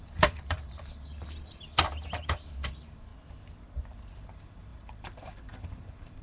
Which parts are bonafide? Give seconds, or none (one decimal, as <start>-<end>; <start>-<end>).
1.7-2.2; 3.1-4.1